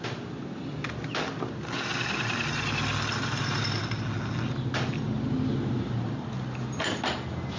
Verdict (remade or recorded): recorded